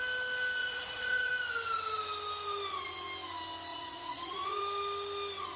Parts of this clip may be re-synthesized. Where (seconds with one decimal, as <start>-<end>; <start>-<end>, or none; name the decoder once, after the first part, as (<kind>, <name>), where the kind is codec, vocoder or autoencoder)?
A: 0.6-1.3 (vocoder, Vocos); 3.7-4.6